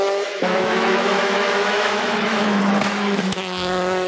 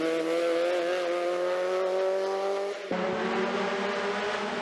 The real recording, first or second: second